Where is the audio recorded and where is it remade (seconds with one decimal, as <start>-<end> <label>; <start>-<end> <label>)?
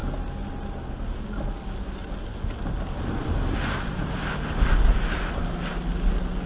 0.0-6.5 recorded